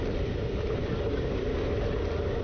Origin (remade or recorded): recorded